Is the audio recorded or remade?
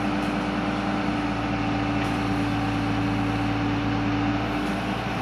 recorded